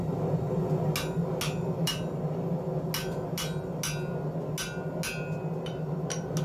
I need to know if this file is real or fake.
real